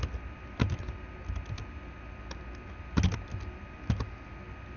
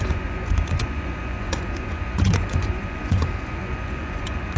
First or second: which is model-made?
second